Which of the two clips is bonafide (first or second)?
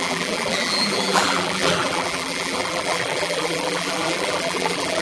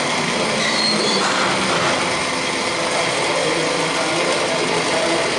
second